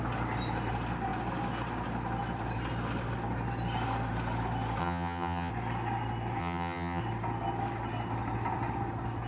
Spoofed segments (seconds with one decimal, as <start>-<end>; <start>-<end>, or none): 4.8-5.5; 6.4-7.0